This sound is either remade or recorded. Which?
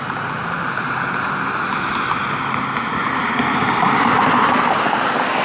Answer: recorded